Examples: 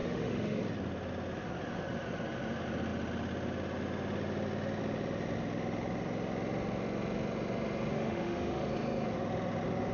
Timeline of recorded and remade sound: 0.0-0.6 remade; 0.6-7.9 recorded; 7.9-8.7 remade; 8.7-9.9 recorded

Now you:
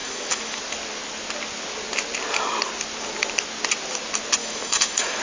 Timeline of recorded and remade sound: 0.0-0.6 remade; 0.6-4.4 recorded; 4.4-5.2 remade

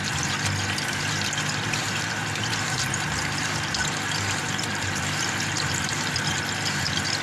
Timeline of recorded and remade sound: 0.0-1.8 recorded; 1.8-6.1 remade; 6.1-7.2 recorded